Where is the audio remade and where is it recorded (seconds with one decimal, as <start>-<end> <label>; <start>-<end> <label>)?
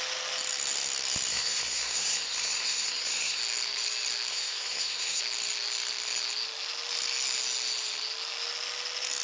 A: 0.0-1.3 recorded; 1.3-3.4 remade; 3.4-4.3 recorded; 4.3-5.2 remade; 5.2-9.2 recorded